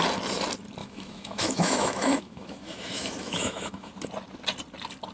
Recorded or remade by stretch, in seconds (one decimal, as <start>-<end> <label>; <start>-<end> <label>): 0.0-0.8 recorded; 0.8-3.9 remade; 3.9-5.1 recorded